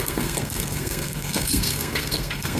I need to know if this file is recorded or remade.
remade